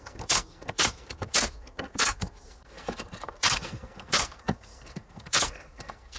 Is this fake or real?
fake